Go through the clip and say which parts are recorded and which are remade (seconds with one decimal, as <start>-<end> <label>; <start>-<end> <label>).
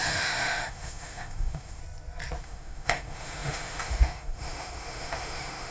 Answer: 0.0-1.8 remade; 1.8-2.4 recorded; 2.4-5.7 remade